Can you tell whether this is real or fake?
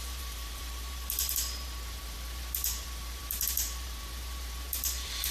fake